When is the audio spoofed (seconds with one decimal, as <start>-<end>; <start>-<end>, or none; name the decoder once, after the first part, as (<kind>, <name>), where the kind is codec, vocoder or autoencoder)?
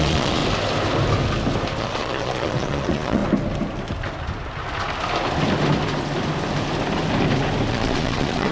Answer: 0.0-0.4 (vocoder, Vocos); 1.8-3.2; 7.7-8.5